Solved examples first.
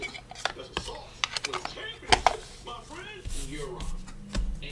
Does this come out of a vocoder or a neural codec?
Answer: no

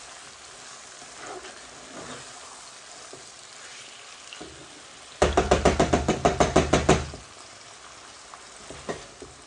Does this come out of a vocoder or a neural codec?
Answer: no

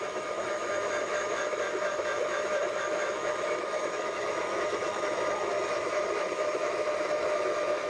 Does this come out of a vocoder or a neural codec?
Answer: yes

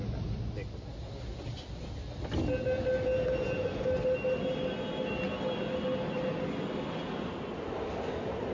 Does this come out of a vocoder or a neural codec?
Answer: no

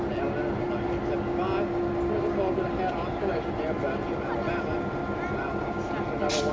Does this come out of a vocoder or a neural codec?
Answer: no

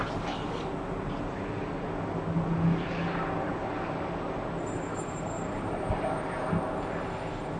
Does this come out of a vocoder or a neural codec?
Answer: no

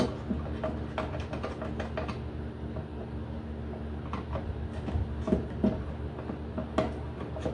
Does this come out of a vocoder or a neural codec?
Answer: no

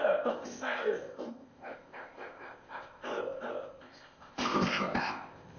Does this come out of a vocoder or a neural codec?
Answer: yes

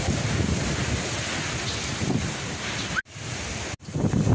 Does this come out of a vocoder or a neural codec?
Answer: no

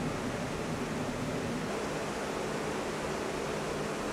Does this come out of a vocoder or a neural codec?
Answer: no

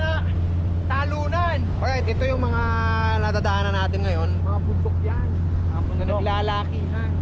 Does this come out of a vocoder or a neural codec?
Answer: no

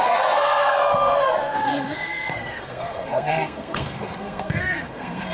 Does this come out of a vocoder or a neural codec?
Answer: yes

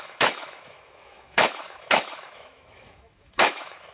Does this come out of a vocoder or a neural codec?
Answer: yes